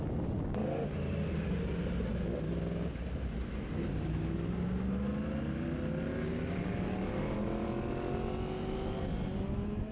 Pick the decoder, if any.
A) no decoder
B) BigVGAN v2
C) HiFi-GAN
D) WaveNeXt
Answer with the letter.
A